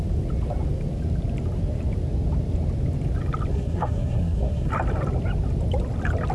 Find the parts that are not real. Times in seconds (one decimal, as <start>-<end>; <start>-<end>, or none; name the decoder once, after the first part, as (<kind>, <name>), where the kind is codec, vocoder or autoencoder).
3.5-4.7 (codec, SNAC)